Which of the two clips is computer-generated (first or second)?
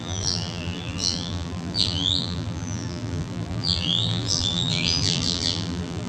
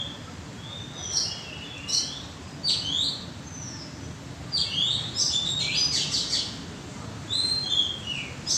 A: first